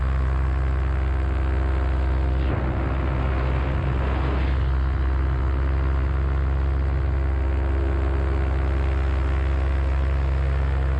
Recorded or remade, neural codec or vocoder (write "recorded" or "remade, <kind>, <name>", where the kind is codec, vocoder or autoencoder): recorded